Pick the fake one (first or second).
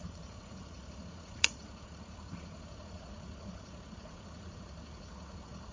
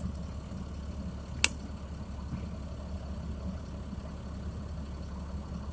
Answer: first